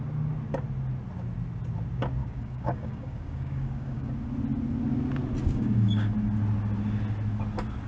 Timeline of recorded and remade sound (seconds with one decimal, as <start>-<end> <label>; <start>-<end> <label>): 0.0-2.2 recorded; 2.2-4.1 remade; 4.1-5.4 recorded; 5.4-6.1 remade; 6.1-7.9 recorded